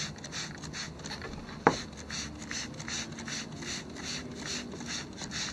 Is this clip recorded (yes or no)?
yes